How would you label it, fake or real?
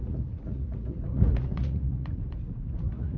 fake